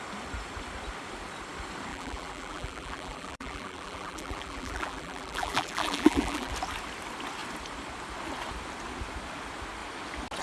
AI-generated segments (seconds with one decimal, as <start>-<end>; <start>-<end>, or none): 1.9-6.5